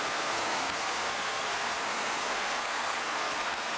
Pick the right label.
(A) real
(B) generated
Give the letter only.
B